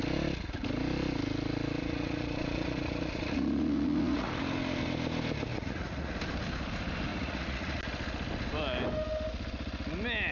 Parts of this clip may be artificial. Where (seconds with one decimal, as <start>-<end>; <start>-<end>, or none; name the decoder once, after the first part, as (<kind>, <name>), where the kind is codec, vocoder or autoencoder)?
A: 1.8-4.3 (vocoder, Vocos); 5.5-6.1; 7.1-7.8